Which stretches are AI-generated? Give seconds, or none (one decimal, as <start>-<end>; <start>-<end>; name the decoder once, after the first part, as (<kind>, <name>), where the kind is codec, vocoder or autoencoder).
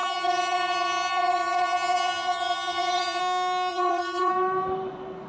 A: 0.0-3.2 (vocoder, HiFi-GAN); 3.7-4.3